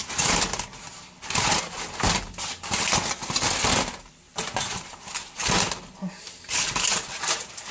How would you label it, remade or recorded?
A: recorded